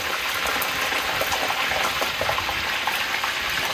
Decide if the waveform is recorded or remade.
recorded